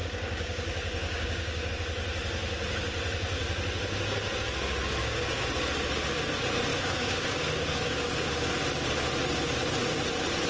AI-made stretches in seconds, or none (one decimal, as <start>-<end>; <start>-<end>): 0.0-1.7; 5.0-5.5; 6.7-8.5